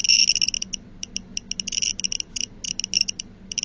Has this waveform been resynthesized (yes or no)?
no